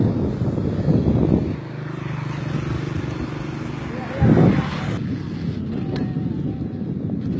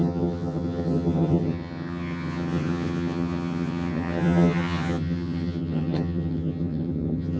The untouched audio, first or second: first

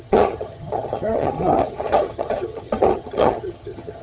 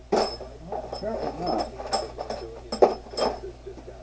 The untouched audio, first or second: second